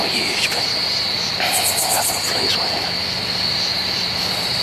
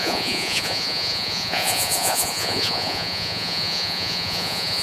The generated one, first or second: second